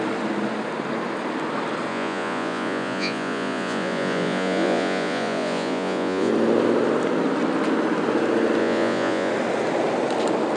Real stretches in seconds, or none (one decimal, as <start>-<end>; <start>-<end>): 0.0-1.9; 6.3-8.6; 9.3-10.6